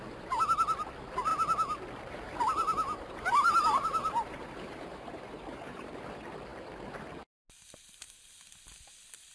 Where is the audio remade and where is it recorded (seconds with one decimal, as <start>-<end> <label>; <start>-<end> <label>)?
0.0-2.6 recorded; 2.6-5.9 remade; 5.9-9.3 recorded